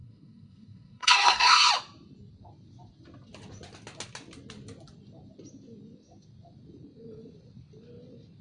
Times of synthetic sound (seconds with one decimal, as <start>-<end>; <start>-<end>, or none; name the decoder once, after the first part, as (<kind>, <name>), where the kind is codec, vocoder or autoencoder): 0.0-1.7 (codec, SNAC)